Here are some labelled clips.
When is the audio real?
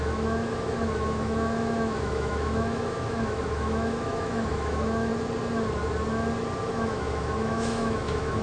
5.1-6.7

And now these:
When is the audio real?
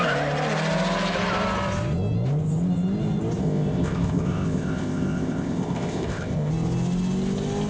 0.0-3.4; 6.5-7.7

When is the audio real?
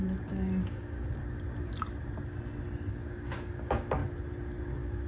1.2-2.9; 4.0-4.6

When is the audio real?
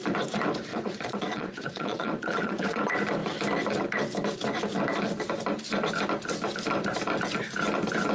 0.0-0.7; 2.8-8.1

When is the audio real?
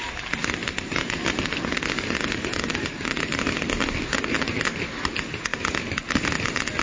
0.0-6.8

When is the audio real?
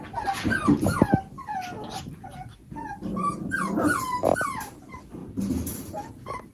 0.0-3.1; 4.0-6.5